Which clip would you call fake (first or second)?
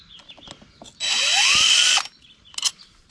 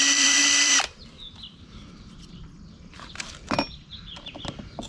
second